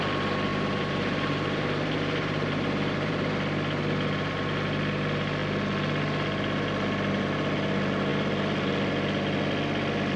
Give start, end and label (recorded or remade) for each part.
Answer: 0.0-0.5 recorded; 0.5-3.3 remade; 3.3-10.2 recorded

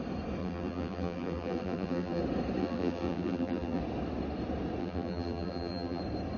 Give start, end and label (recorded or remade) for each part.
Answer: 0.0-0.4 recorded; 0.4-2.2 remade; 2.2-2.6 recorded; 2.6-3.8 remade; 3.8-4.8 recorded; 4.8-6.0 remade; 6.0-6.4 recorded

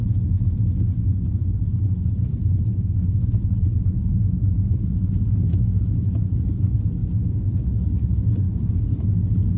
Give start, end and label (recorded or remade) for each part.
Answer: 0.0-2.3 recorded; 2.3-5.2 remade; 5.2-9.6 recorded